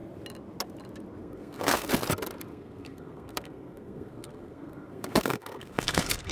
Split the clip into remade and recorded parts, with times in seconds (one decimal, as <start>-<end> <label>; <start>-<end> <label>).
0.0-1.2 recorded; 1.2-1.9 remade; 1.9-2.5 recorded; 2.5-6.3 remade